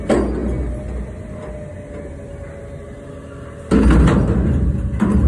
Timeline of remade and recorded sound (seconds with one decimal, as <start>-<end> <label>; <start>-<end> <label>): 0.0-5.3 recorded